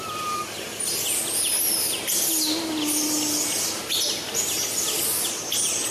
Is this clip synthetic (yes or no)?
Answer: no